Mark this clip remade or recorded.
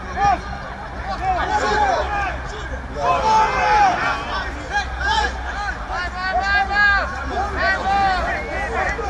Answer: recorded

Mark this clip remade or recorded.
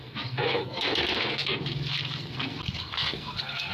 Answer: remade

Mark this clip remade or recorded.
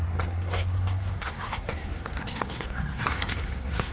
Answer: remade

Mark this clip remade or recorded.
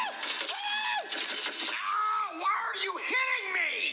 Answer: recorded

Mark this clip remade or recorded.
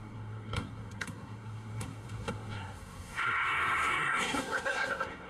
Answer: remade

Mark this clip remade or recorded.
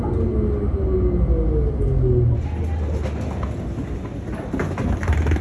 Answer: recorded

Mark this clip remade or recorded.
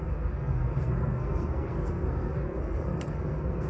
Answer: remade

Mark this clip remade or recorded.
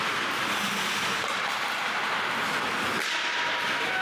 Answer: recorded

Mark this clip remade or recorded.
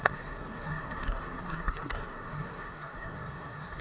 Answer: remade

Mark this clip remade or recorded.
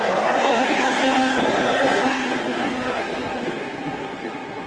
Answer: remade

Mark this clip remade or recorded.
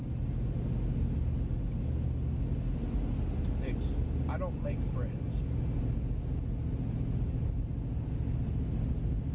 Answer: recorded